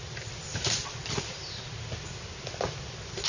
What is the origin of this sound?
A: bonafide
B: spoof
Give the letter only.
A